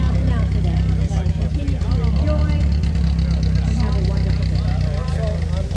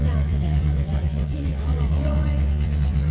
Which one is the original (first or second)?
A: first